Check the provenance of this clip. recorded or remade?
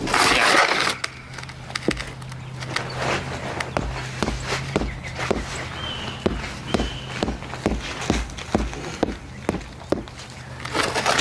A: recorded